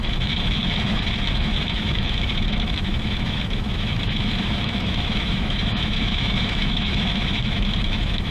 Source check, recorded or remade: remade